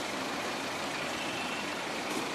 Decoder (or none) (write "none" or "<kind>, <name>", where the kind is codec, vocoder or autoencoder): vocoder, BigVGAN v2